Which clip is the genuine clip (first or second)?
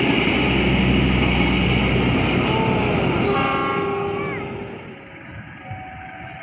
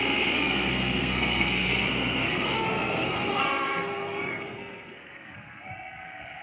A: first